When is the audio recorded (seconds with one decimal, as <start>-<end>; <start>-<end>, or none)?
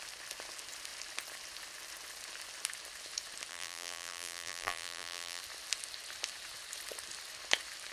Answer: 0.0-3.5; 5.4-7.9